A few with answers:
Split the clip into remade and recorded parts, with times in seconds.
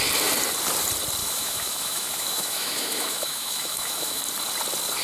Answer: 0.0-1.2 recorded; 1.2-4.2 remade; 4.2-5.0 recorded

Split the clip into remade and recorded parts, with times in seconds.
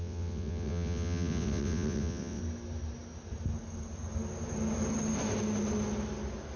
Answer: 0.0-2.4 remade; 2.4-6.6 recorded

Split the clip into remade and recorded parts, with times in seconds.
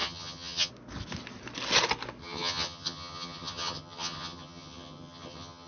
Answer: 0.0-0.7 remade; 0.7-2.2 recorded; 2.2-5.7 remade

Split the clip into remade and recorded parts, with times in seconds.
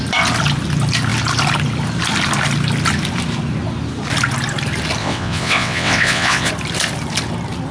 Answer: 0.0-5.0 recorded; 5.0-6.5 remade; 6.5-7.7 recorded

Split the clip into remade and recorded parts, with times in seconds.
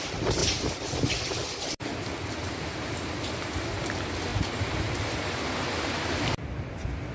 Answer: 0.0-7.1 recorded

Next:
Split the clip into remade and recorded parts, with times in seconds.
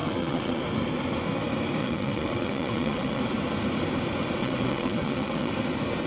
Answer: 0.0-0.6 remade; 0.6-1.8 recorded; 1.8-3.2 remade; 3.2-4.4 recorded; 4.4-5.5 remade; 5.5-6.1 recorded